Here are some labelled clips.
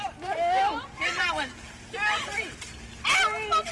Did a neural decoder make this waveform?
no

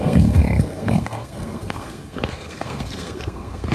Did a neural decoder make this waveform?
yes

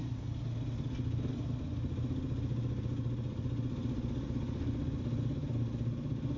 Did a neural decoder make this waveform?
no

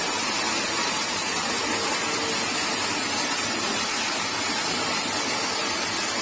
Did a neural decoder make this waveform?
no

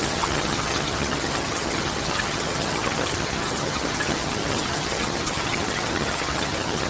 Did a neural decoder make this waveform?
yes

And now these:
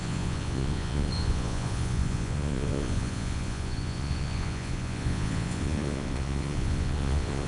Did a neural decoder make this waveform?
yes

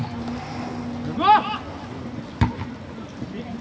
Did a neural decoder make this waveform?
no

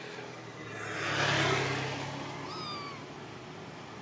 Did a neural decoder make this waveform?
no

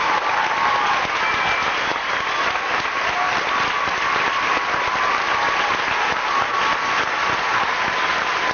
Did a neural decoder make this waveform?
no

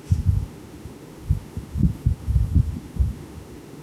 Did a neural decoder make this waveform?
yes